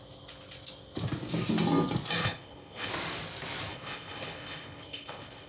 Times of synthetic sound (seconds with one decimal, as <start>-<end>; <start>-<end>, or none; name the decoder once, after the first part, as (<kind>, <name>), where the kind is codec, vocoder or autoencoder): 2.2-2.9 (codec, HILCodec); 3.7-5.5